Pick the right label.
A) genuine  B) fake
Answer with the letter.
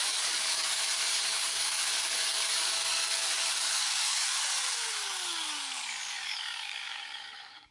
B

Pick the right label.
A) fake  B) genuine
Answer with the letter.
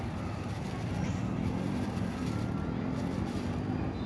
B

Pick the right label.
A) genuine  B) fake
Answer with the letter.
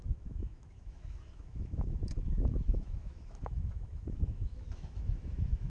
B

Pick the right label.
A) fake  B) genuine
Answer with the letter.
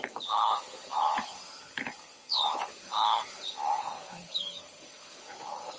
A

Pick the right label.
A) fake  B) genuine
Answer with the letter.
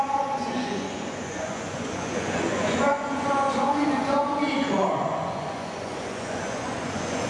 A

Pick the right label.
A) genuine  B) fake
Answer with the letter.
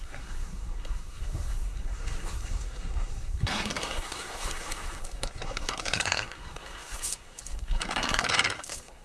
B